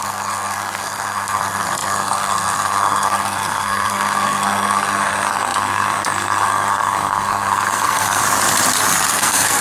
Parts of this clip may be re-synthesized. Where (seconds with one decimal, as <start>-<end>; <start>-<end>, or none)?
0.0-8.2; 9.1-9.6